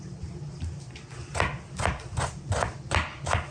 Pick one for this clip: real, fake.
real